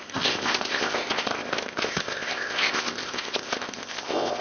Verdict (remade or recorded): remade